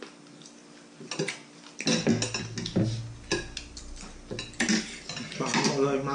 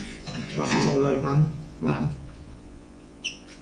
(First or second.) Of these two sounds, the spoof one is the second